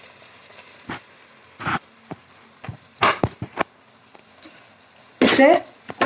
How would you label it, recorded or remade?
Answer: recorded